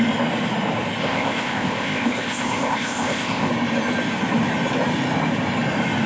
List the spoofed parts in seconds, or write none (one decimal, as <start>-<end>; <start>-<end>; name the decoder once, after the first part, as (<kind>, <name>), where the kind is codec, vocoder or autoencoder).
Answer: 1.0-3.5 (codec, ZipCodec)

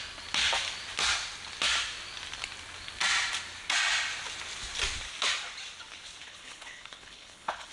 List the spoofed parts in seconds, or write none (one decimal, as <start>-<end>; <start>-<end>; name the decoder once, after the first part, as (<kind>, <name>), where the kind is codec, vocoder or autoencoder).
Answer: 6.2-7.7 (codec, HILCodec)

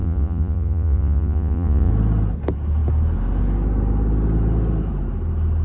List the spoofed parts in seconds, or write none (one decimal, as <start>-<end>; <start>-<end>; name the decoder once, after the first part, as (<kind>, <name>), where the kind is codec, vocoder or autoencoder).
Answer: 0.0-1.9 (vocoder, Vocos)

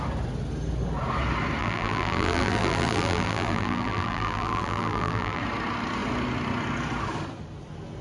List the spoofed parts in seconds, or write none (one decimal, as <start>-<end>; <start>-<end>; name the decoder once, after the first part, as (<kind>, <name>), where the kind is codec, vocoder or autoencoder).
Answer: 1.6-5.4 (vocoder, BigVGAN v2)

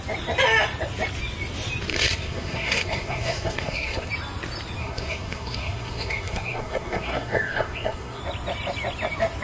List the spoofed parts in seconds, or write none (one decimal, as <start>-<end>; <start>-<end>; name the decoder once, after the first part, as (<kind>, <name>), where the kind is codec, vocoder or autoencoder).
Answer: 1.9-4.1 (codec, SNAC); 4.8-8.2

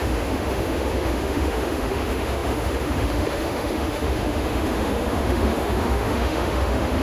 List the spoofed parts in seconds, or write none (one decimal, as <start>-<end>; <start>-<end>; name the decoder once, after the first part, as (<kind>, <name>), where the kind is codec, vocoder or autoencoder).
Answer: 0.0-7.0 (autoencoder, DAC-VAE)

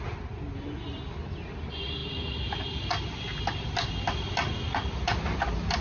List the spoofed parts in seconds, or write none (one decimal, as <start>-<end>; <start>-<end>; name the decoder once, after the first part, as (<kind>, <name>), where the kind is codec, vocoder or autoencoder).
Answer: none

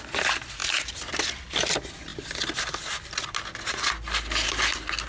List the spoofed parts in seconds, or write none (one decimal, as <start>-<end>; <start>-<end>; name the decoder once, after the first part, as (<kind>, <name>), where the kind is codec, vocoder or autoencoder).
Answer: none